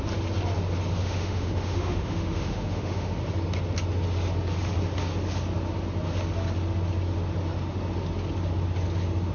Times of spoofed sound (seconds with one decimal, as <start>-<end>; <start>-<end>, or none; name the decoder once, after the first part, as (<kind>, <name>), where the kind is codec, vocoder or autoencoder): 1.0-3.2 (autoencoder, DAC-VAE)